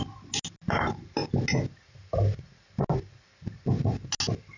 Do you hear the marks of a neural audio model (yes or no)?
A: no